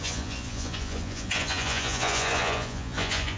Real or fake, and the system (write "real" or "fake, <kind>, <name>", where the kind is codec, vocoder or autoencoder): fake, vocoder, Vocos